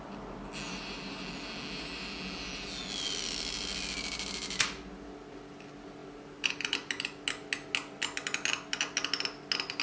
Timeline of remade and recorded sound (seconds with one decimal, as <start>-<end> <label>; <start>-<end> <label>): 0.0-9.8 recorded